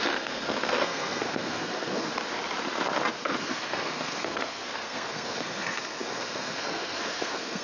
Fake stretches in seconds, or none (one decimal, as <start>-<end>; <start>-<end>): 0.0-2.1; 3.2-7.6